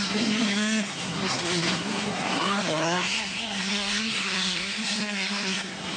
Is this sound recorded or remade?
remade